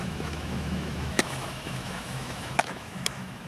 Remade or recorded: remade